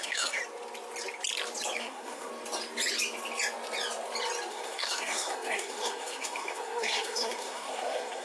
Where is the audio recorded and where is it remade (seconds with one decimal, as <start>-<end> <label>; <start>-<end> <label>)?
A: 0.0-0.4 remade; 0.4-1.8 recorded; 1.8-2.3 remade; 2.3-4.5 recorded; 4.5-8.2 remade